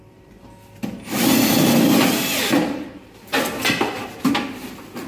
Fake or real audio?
real